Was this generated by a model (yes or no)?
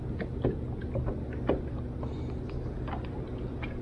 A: no